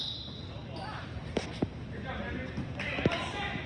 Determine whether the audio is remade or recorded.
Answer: remade